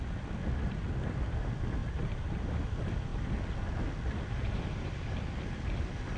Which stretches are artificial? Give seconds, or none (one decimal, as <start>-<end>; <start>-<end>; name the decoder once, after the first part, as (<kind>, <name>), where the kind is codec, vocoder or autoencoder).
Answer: 1.8-2.5 (vocoder, BigVGAN v2)